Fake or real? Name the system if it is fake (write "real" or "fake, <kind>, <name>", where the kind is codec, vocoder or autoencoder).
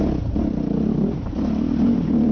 real